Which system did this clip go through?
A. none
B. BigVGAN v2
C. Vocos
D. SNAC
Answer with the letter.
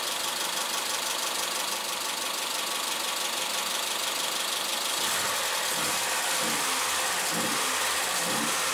A